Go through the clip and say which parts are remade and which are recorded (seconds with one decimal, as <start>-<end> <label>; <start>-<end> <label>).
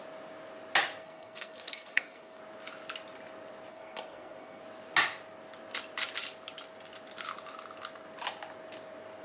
0.0-1.0 recorded; 1.0-2.4 remade; 2.4-3.7 recorded; 3.7-4.6 remade; 4.6-9.2 recorded